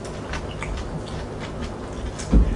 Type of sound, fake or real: real